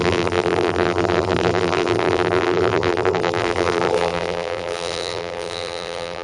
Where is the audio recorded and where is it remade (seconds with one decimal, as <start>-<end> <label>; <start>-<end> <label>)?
0.0-6.2 remade